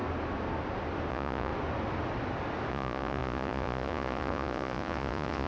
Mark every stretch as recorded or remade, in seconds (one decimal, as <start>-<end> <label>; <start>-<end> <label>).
0.0-1.1 recorded; 1.1-1.5 remade; 1.5-2.7 recorded; 2.7-5.5 remade